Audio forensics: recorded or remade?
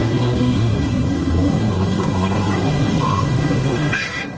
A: remade